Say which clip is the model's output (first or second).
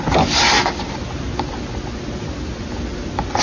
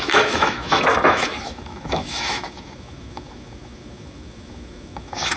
second